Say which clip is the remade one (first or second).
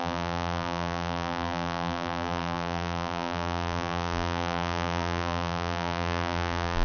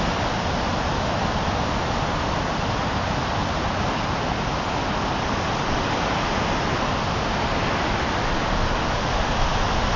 first